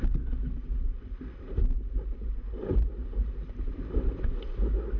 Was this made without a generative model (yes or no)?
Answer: yes